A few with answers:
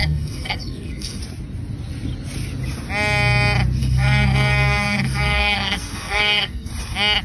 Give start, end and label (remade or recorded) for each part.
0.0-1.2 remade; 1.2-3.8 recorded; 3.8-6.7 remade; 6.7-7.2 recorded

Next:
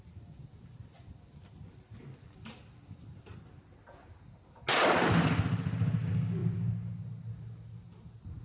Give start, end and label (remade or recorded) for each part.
0.0-8.4 recorded

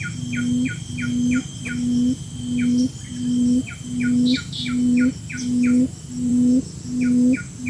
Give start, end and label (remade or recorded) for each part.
0.0-7.7 recorded

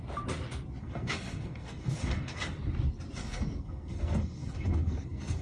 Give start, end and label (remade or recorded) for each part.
0.0-0.8 recorded; 0.8-2.4 remade; 2.4-3.2 recorded; 3.2-5.4 remade

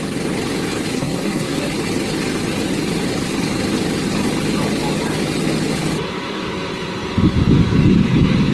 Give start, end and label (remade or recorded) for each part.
0.0-0.9 recorded; 0.9-1.6 remade; 1.6-8.5 recorded

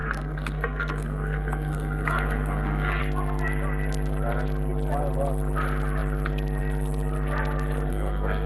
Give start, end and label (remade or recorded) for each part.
0.0-3.0 remade; 3.0-7.9 recorded; 7.9-8.5 remade